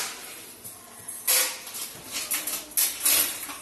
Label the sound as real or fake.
real